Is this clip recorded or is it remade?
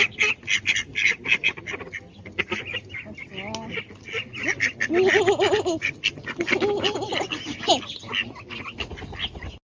recorded